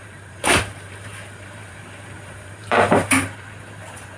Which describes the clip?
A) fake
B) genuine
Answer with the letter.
A